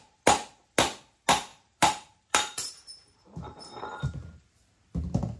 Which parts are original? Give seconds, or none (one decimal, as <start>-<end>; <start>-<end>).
0.0-1.5; 4.7-5.4